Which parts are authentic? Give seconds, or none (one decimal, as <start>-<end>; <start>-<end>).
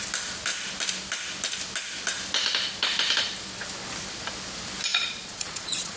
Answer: 0.0-4.9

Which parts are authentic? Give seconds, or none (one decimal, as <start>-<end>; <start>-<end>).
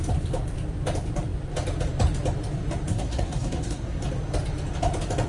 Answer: 0.0-2.9; 4.0-5.3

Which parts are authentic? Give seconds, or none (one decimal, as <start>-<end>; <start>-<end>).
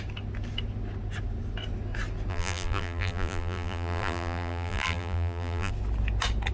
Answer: 0.0-2.3; 5.7-6.5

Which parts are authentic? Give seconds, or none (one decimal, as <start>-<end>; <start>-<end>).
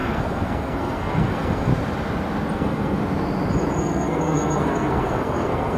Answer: 1.7-2.5; 3.0-3.8